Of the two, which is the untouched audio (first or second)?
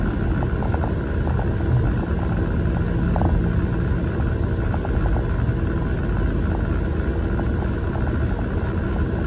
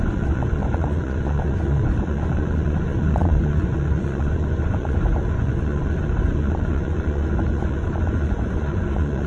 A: first